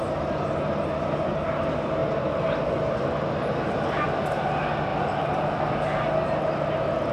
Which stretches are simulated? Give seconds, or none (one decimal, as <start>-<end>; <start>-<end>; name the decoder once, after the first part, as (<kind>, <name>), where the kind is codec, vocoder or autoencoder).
4.9-5.6 (vocoder, BigVGAN v2)

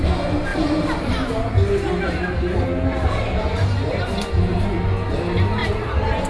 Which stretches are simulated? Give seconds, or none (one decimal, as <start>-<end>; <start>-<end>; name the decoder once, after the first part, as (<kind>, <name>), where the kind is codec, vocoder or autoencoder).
0.5-1.1 (vocoder, BigVGAN v2); 5.6-6.3

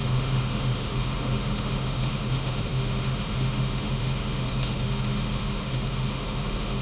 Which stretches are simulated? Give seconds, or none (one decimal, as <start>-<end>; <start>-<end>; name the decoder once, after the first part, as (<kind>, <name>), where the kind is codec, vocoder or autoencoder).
0.0-6.8 (autoencoder, DAC-VAE)

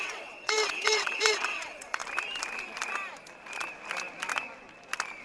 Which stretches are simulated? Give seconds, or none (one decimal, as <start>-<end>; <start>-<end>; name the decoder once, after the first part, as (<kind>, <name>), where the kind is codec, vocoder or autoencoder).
0.0-2.0 (vocoder, WaveNeXt)

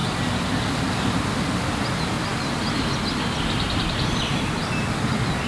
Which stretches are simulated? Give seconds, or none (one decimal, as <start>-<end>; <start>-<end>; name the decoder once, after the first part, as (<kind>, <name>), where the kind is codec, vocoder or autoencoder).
none